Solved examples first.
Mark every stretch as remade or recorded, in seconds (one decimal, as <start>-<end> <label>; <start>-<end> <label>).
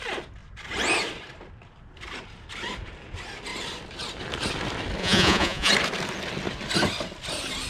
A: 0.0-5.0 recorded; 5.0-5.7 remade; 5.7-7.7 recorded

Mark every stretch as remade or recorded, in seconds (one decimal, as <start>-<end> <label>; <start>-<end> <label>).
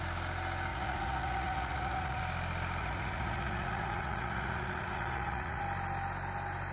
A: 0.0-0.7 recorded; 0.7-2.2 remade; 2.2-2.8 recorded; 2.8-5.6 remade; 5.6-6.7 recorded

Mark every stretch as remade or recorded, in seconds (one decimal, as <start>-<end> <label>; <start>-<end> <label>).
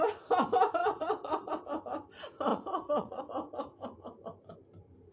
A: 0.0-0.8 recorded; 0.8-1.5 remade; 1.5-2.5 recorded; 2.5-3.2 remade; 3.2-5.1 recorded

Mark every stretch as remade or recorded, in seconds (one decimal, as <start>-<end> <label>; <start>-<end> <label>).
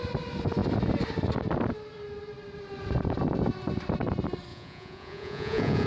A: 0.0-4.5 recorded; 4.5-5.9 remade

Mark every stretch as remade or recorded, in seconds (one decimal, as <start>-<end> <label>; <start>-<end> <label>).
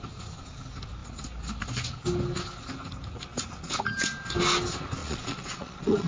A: 0.0-5.0 recorded; 5.0-6.1 remade